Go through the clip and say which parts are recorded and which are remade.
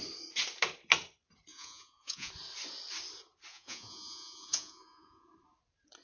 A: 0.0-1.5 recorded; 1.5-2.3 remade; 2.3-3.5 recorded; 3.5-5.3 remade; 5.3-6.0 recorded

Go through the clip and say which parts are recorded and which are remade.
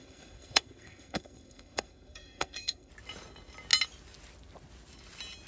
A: 0.0-2.9 remade; 2.9-5.5 recorded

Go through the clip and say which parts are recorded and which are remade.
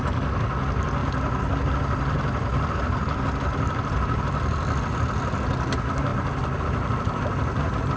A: 0.0-8.0 recorded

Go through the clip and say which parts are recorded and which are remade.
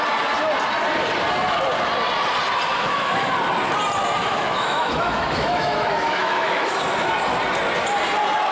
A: 0.0-2.8 recorded; 2.8-3.3 remade; 3.3-4.2 recorded; 4.2-6.8 remade; 6.8-8.5 recorded